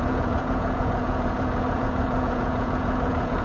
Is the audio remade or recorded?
remade